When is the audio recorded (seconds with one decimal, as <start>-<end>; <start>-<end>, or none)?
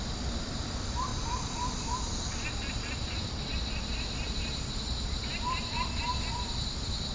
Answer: 1.1-2.7